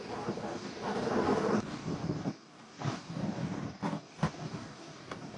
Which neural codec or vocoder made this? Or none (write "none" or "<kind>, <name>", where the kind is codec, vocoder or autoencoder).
codec, DAC